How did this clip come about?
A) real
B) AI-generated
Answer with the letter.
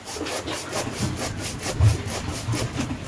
A